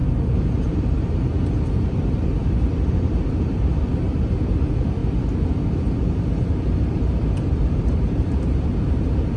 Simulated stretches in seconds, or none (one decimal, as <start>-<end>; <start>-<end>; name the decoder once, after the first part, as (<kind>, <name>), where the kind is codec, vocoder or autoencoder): 0.0-5.0 (vocoder, BigVGAN v2); 6.7-9.4